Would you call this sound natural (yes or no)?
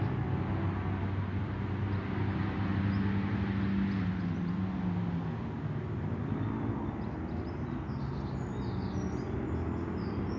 yes